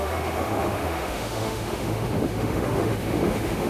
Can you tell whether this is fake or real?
fake